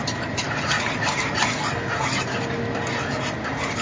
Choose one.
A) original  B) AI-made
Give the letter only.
A